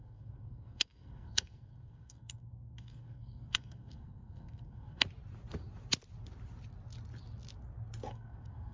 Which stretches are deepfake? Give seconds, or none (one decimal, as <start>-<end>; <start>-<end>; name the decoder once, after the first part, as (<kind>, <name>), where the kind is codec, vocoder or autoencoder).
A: 0.0-5.0 (codec, SNAC); 8.1-8.7